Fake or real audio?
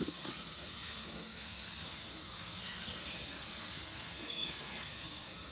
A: fake